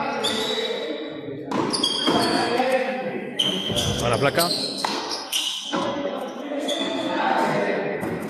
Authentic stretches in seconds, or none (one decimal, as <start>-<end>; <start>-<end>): 0.0-2.2; 4.0-4.6